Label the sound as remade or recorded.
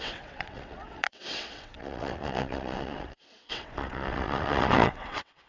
remade